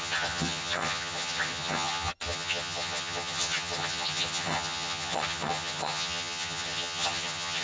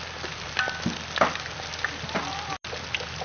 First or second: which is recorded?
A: second